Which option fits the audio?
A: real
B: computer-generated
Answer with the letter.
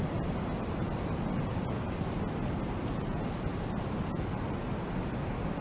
A